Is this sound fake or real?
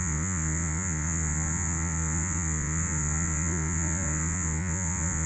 fake